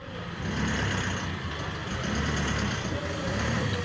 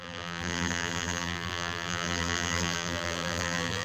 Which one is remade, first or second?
second